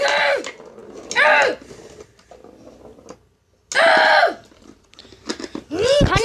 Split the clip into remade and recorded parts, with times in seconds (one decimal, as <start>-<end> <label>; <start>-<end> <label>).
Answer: 0.0-6.2 recorded